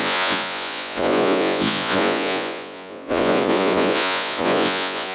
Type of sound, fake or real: fake